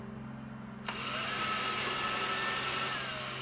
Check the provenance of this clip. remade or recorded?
recorded